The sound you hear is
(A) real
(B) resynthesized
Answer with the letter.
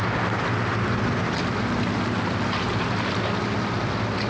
A